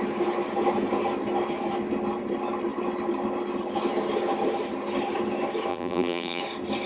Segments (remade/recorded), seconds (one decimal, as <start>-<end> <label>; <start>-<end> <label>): 0.0-5.7 recorded; 5.7-6.4 remade; 6.4-6.9 recorded